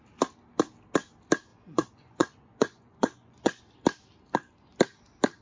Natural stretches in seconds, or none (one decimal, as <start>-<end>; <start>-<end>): 0.0-1.5; 3.6-5.4

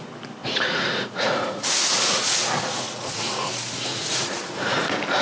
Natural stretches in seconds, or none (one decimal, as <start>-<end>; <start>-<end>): 0.0-0.4; 3.5-3.9; 4.8-5.2

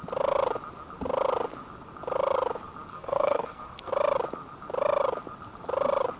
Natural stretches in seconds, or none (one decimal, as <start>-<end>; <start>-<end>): 0.0-2.9; 3.9-6.2

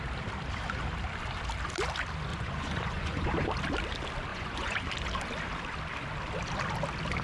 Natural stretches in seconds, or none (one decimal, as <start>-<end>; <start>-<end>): 0.0-2.3; 3.5-4.3; 4.8-7.2

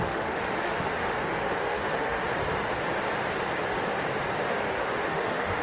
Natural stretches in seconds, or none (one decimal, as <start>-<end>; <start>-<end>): 2.2-4.4